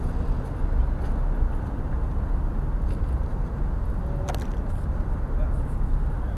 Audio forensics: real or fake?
real